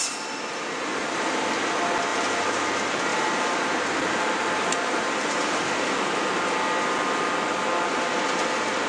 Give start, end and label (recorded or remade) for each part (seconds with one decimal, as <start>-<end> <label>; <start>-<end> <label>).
0.0-0.9 recorded; 0.9-1.4 remade; 1.4-2.1 recorded; 2.1-2.6 remade; 2.6-3.1 recorded; 3.1-5.6 remade; 5.6-8.9 recorded